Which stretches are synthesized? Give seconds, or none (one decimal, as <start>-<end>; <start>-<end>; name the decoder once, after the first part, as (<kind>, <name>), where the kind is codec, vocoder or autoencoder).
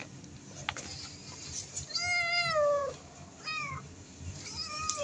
none